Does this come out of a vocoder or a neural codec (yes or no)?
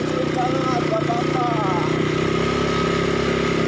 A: no